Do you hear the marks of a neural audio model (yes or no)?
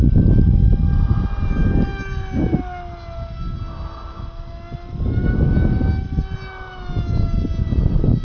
no